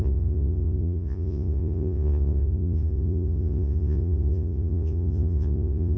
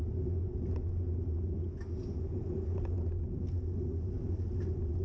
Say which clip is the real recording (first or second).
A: second